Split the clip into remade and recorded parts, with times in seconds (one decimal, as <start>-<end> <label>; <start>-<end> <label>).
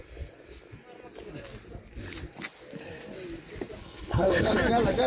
0.0-3.8 recorded; 3.8-4.6 remade; 4.6-5.1 recorded